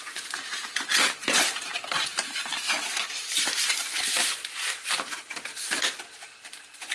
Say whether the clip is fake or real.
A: fake